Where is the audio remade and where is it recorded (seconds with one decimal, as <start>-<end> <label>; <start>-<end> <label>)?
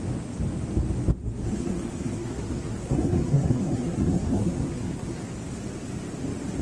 0.0-1.2 recorded; 1.2-5.2 remade; 5.2-6.6 recorded